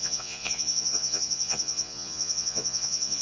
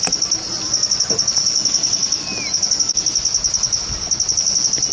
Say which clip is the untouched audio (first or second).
second